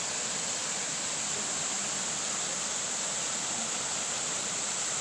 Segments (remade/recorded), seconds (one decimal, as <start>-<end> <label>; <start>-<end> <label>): 0.0-5.0 recorded

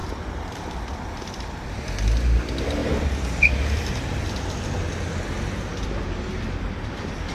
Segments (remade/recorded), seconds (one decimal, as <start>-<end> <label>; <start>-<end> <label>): 0.0-1.1 remade; 1.1-2.8 recorded; 2.8-3.9 remade; 3.9-7.3 recorded